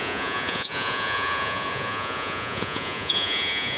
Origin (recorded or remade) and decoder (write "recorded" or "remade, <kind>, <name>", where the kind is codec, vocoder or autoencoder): remade, vocoder, Vocos